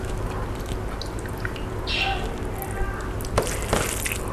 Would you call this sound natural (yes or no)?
yes